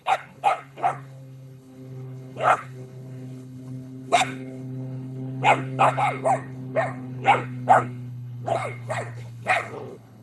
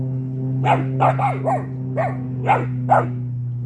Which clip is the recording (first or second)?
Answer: second